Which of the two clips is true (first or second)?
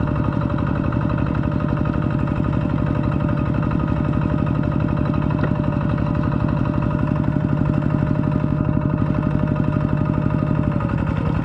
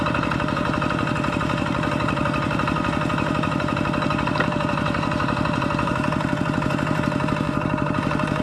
first